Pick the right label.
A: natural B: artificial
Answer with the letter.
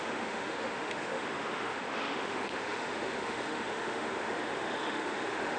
B